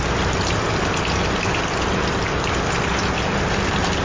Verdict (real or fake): real